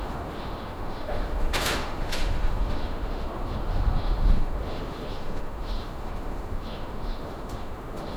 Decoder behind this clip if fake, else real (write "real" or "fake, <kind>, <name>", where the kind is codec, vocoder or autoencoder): fake, autoencoder, DAC-VAE